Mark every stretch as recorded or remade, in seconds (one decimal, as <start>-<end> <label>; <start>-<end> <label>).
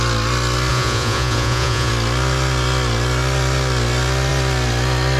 0.0-0.7 recorded; 0.7-1.9 remade; 1.9-5.2 recorded